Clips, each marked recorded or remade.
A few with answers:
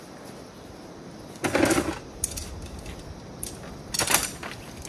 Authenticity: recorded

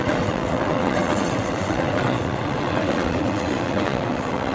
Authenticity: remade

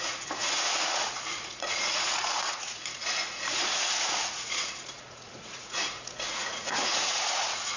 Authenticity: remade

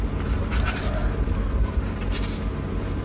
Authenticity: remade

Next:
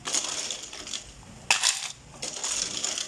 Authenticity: recorded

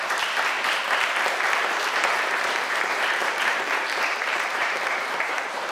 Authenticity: remade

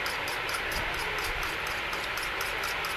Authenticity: recorded